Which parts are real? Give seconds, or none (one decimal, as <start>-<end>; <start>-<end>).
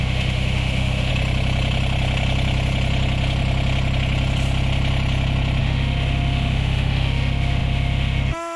1.1-5.6